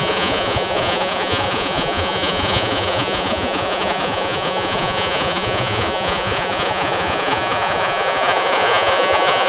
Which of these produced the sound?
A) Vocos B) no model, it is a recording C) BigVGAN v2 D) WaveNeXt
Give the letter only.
A